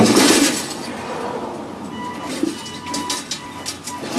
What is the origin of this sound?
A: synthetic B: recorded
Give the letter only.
B